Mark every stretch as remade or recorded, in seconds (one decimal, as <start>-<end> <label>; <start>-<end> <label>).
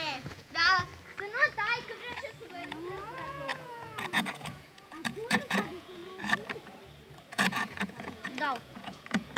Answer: 0.0-0.9 remade; 0.9-2.5 recorded; 2.5-6.0 remade; 6.0-7.3 recorded; 7.3-9.4 remade